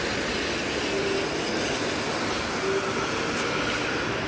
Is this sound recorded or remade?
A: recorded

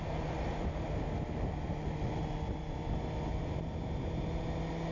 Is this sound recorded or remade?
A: recorded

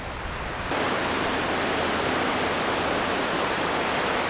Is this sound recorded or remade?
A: recorded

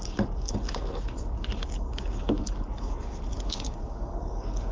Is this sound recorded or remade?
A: remade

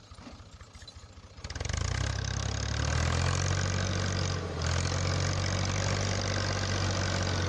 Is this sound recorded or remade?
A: recorded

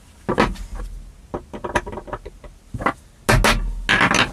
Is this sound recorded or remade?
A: recorded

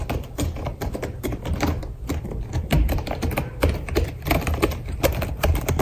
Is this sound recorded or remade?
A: remade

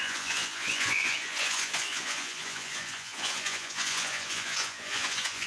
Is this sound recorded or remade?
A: remade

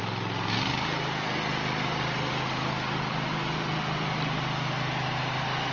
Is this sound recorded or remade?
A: recorded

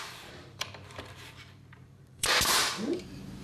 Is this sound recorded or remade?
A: remade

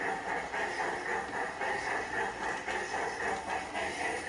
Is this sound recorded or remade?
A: recorded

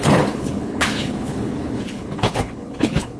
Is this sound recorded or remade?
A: remade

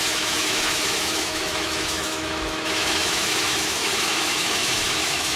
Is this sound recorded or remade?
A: remade